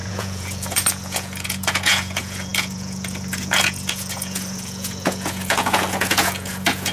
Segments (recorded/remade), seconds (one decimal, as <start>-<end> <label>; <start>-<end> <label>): 0.0-6.9 remade